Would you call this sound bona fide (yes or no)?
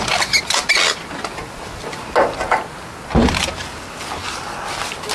yes